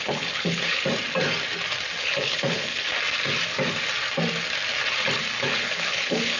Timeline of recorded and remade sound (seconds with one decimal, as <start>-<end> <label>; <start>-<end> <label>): 0.0-0.8 remade; 0.8-2.0 recorded; 2.0-2.9 remade; 2.9-5.4 recorded; 5.4-6.4 remade

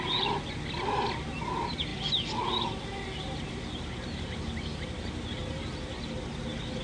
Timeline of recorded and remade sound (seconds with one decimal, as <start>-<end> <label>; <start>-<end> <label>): 0.0-6.8 recorded

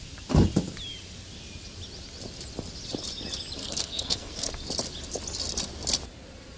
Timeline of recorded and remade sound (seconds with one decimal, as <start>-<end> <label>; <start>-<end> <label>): 0.0-3.6 recorded; 3.6-4.5 remade; 4.5-6.6 recorded

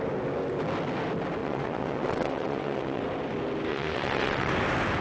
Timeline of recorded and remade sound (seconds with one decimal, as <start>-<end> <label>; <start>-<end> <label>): 0.0-1.4 recorded; 1.4-3.0 remade; 3.0-3.7 recorded; 3.7-4.5 remade; 4.5-5.0 recorded

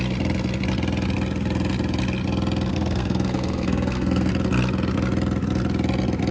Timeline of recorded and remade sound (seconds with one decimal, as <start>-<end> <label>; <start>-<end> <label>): 0.0-2.7 recorded; 2.7-4.3 remade; 4.3-6.3 recorded

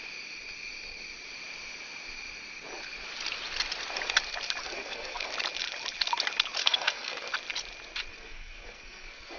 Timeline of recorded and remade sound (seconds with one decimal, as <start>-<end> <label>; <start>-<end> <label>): 0.0-4.6 recorded; 4.6-5.3 remade; 5.3-6.6 recorded; 6.6-7.3 remade; 7.3-8.1 recorded; 8.1-9.4 remade

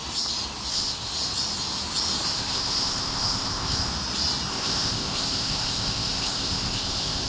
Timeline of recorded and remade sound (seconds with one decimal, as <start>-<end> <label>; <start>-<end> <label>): 0.0-0.7 recorded; 0.7-1.1 remade; 1.1-2.3 recorded; 2.3-3.9 remade; 3.9-4.5 recorded; 4.5-7.3 remade